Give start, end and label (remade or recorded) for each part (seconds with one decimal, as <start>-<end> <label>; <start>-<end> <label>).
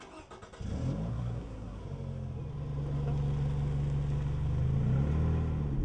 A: 0.0-1.1 recorded; 1.1-1.8 remade; 1.8-5.8 recorded